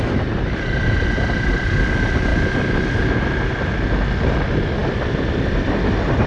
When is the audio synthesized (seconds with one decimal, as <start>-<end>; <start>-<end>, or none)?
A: 4.8-5.7